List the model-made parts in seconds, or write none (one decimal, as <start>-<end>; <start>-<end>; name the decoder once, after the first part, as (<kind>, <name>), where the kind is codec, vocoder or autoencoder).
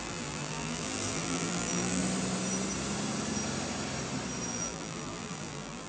0.0-2.0 (vocoder, BigVGAN v2); 4.5-5.9